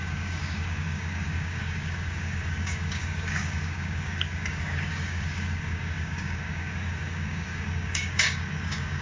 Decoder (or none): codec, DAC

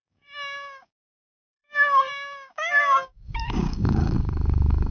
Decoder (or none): codec, DAC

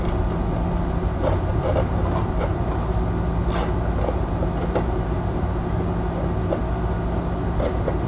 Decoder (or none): none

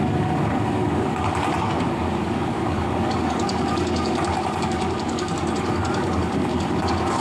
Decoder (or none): codec, DAC